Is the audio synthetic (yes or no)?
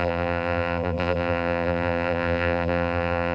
yes